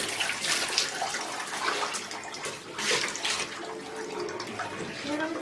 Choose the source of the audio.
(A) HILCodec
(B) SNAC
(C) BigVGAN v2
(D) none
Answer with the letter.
D